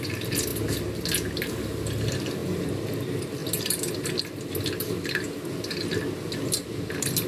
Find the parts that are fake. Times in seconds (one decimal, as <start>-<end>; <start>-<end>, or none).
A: none